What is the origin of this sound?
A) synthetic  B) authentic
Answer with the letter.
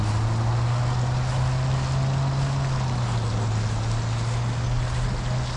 B